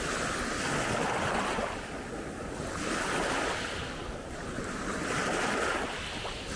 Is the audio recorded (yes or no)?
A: yes